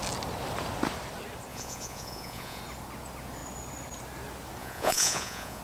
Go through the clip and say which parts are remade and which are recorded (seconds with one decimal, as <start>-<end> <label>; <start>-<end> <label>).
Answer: 0.0-1.5 recorded; 1.5-2.6 remade; 2.6-4.6 recorded; 4.6-5.6 remade

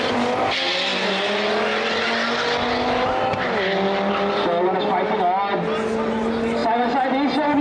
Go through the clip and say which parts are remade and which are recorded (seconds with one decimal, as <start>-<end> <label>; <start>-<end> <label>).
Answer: 0.0-7.6 recorded

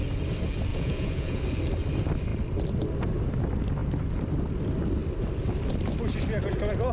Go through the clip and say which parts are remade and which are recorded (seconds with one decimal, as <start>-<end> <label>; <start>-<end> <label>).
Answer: 0.0-0.7 recorded; 0.7-1.4 remade; 1.4-6.9 recorded

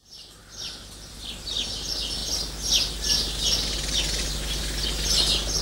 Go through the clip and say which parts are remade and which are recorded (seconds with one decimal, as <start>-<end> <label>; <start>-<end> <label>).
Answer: 0.0-5.6 recorded

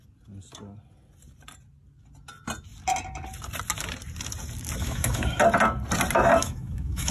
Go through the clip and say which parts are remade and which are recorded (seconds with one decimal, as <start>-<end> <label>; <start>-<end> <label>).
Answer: 0.0-4.8 recorded; 4.8-5.4 remade; 5.4-6.4 recorded; 6.4-7.1 remade

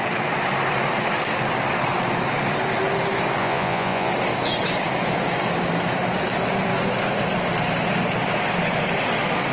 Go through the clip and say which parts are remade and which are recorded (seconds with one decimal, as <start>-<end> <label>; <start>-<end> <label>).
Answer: 0.0-3.4 recorded; 3.4-4.1 remade; 4.1-9.5 recorded